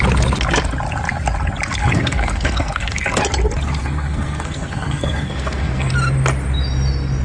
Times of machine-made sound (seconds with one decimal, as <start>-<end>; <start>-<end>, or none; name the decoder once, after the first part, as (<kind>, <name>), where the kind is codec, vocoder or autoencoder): 1.8-3.2 (codec, SNAC); 3.8-5.9